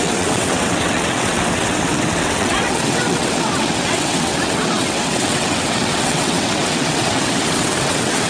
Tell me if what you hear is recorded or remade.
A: remade